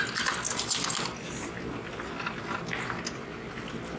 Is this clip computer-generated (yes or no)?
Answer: no